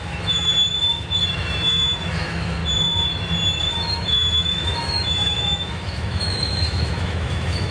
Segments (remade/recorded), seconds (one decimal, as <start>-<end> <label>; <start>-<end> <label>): 0.0-0.5 remade; 0.5-1.3 recorded; 1.3-2.6 remade; 2.6-3.7 recorded; 3.7-7.7 remade